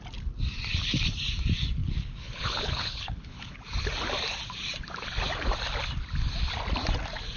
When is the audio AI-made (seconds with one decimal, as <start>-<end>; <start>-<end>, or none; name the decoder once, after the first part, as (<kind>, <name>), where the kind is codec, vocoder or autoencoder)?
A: 1.8-3.6 (codec, HILCodec)